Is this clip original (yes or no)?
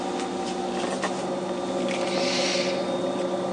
yes